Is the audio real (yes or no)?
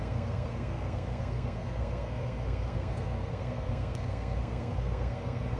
no